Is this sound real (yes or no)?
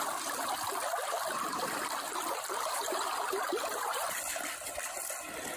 no